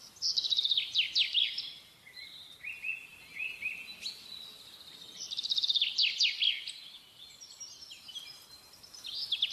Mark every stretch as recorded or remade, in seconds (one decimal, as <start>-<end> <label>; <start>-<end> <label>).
0.0-9.5 recorded